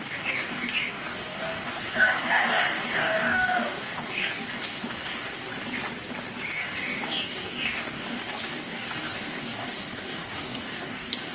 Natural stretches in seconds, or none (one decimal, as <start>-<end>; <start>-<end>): 5.5-6.5